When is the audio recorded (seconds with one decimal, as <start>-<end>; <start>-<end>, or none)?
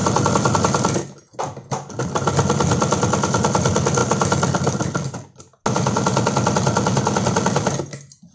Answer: 0.0-8.3